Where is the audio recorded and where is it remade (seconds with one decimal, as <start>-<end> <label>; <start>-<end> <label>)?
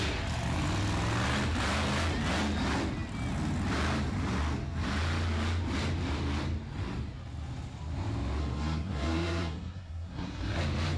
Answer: 0.0-8.4 recorded; 8.4-10.6 remade; 10.6-11.0 recorded